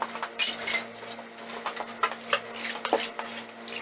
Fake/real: real